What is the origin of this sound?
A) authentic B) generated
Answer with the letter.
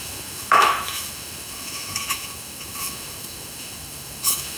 B